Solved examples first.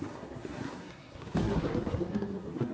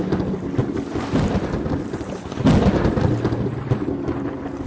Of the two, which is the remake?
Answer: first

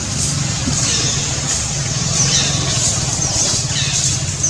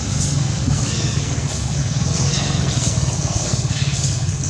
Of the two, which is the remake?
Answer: second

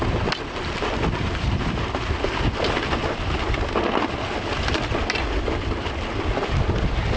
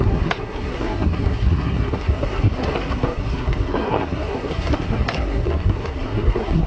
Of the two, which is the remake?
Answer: second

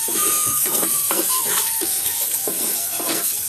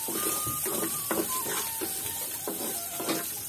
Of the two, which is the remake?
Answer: first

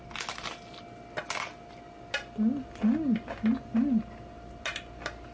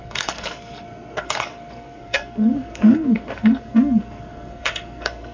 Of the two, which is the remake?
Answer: second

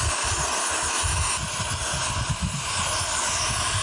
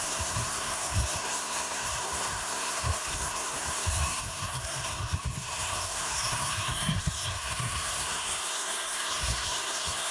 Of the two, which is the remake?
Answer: second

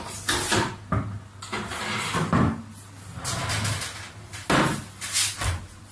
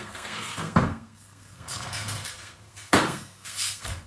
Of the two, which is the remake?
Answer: second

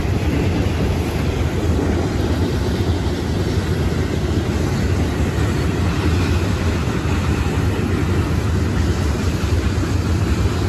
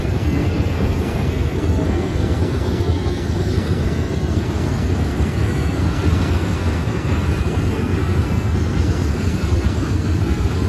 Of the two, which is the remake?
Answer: second